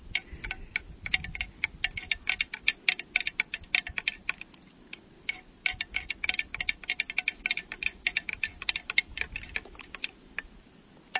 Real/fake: real